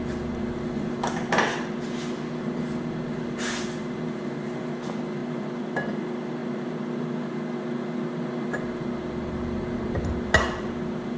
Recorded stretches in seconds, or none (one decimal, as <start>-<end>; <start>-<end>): 0.0-11.2

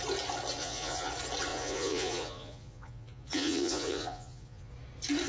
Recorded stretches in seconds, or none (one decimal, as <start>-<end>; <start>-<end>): 0.0-0.6; 1.1-1.5; 4.7-5.3

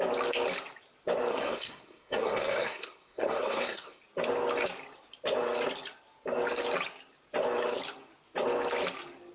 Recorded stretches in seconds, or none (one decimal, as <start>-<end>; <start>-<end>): 0.0-1.3; 4.0-9.3

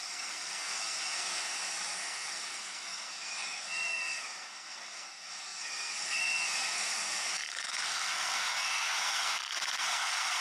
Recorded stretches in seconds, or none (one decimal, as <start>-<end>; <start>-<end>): none

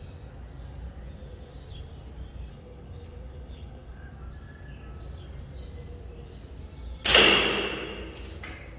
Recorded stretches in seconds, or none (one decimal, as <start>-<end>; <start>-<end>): 0.0-2.5; 4.1-8.8

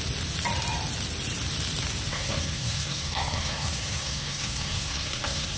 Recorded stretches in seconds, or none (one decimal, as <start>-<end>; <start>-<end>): 0.0-2.1

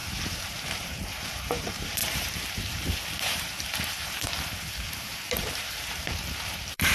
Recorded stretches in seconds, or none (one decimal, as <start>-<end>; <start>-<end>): none